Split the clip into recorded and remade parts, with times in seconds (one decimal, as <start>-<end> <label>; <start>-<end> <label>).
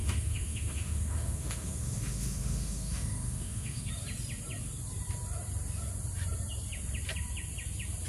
0.0-3.9 remade; 3.9-8.1 recorded